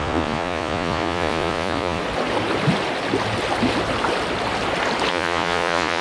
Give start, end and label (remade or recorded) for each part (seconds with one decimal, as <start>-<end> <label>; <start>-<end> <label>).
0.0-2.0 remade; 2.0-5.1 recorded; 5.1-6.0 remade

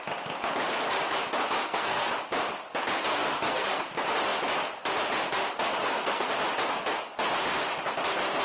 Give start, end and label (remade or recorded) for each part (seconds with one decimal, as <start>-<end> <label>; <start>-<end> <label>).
0.0-1.6 recorded; 1.6-2.1 remade; 2.1-3.2 recorded; 3.2-3.9 remade; 3.9-5.8 recorded; 5.8-6.3 remade; 6.3-8.4 recorded

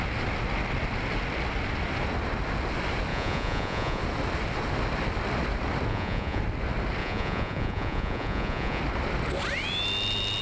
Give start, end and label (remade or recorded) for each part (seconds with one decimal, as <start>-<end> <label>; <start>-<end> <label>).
0.0-3.1 recorded; 3.1-4.0 remade; 4.0-5.9 recorded; 5.9-6.4 remade; 6.4-7.0 recorded; 7.0-8.8 remade; 8.8-10.4 recorded

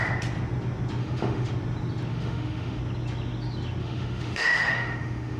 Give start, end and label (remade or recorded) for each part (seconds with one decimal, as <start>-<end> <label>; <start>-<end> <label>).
0.0-1.0 recorded; 1.0-1.5 remade; 1.5-2.1 recorded; 2.1-2.8 remade; 2.8-3.8 recorded; 3.8-5.4 remade

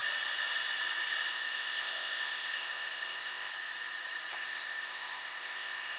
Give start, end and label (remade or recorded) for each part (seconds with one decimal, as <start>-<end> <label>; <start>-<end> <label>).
0.0-1.3 recorded; 1.3-3.5 remade; 3.5-4.3 recorded; 4.3-6.0 remade

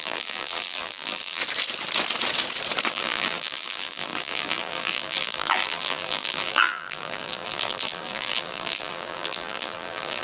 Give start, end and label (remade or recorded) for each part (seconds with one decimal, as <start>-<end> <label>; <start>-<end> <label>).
0.0-1.4 remade; 1.4-2.9 recorded; 2.9-10.2 remade

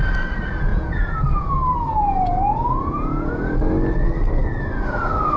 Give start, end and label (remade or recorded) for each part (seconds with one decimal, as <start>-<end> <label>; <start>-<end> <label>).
0.0-0.7 recorded; 0.7-3.3 remade; 3.3-5.4 recorded